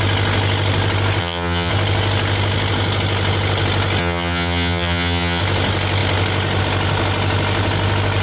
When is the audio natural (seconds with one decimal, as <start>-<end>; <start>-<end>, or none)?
0.0-1.2; 1.7-4.0; 5.4-8.2